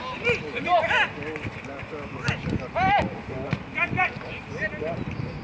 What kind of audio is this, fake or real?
real